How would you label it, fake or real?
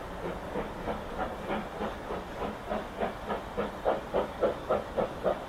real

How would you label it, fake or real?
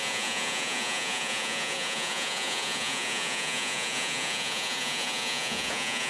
fake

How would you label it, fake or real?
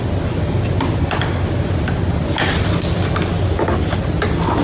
real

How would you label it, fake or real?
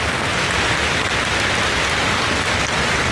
real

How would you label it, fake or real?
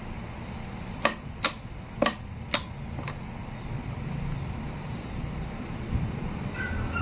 real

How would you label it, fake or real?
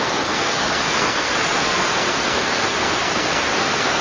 fake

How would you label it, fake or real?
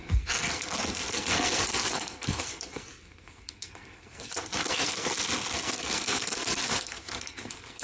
fake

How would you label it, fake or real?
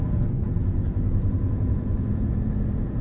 fake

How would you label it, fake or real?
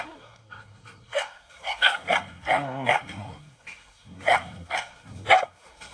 fake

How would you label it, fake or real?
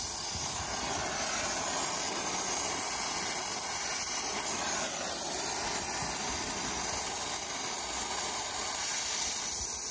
real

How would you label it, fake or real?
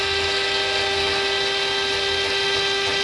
real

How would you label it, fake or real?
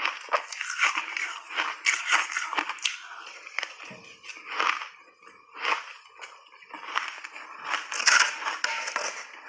real